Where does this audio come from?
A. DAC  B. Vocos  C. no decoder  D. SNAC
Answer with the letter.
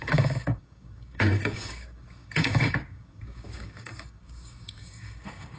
A